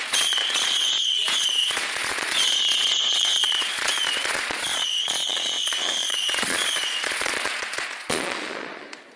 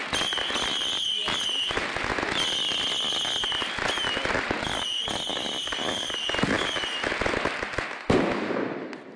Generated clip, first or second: first